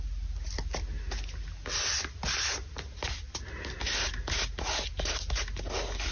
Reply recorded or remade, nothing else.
recorded